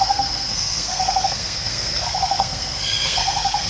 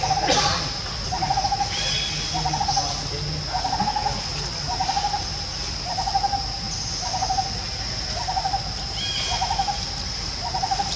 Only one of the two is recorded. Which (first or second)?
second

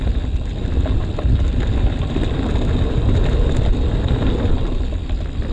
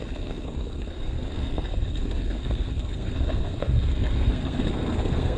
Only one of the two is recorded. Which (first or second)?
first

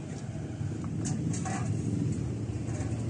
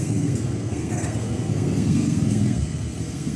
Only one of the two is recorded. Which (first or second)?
first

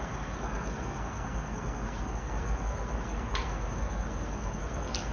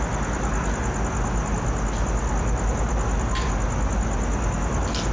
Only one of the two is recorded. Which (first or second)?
second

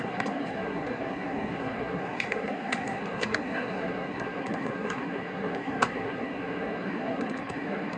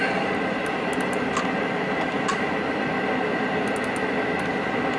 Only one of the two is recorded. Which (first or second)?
second